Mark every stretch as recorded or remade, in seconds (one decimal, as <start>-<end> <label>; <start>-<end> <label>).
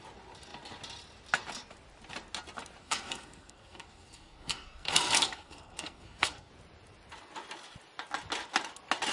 0.0-2.8 recorded; 2.8-6.5 remade; 6.5-9.1 recorded